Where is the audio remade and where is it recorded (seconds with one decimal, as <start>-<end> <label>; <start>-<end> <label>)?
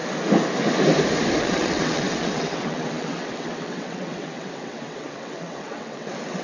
0.0-1.4 recorded; 1.4-6.4 remade